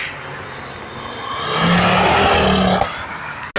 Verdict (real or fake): real